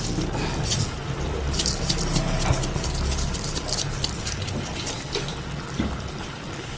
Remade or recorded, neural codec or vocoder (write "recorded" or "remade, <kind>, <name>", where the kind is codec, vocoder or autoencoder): recorded